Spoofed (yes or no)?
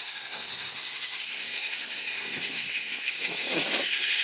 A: yes